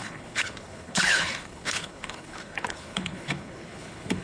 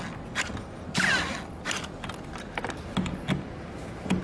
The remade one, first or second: first